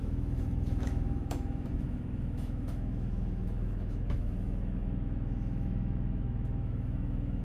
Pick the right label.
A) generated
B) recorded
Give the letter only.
A